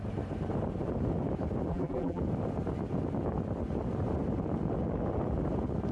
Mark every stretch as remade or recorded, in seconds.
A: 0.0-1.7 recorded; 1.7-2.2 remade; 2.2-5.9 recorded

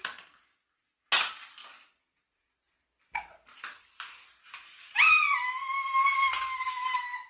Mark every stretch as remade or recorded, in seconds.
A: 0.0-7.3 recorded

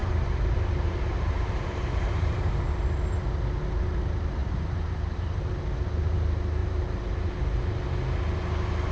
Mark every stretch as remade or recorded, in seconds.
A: 0.0-2.7 remade; 2.7-4.4 recorded; 4.4-5.5 remade; 5.5-6.6 recorded; 6.6-7.3 remade; 7.3-8.9 recorded